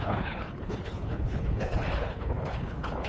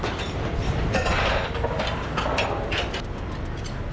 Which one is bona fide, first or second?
second